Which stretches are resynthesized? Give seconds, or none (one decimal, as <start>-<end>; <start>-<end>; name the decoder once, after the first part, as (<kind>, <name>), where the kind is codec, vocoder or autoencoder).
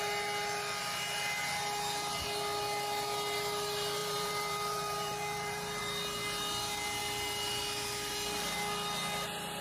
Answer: 4.0-5.8 (vocoder, BigVGAN v2)